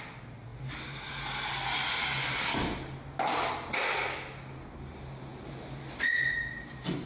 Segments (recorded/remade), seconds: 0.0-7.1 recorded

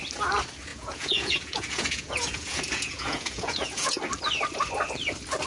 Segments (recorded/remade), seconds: 0.0-0.7 recorded; 0.7-4.0 remade; 4.0-5.5 recorded